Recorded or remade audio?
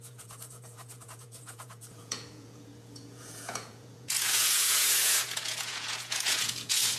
remade